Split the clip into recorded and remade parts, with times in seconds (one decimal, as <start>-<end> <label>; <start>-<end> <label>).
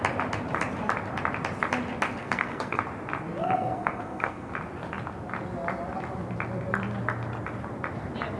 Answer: 0.0-2.2 recorded; 2.2-2.8 remade; 2.8-3.4 recorded; 3.4-4.5 remade; 4.5-8.4 recorded